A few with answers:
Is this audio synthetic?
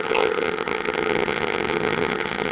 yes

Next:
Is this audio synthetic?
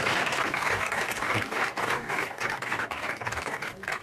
yes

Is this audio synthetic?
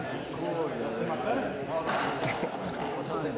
no